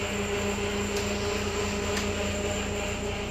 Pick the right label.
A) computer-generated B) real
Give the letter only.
B